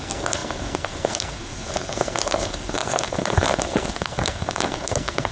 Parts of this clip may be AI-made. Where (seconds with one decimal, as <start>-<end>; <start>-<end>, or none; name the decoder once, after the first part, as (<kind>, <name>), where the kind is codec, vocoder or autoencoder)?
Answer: 0.0-5.3 (codec, SNAC)